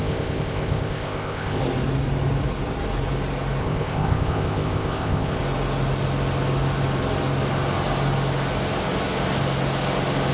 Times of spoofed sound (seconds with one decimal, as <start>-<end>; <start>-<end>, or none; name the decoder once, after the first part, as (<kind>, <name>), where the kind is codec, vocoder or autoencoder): 0.0-1.6 (codec, ZipCodec); 3.6-5.4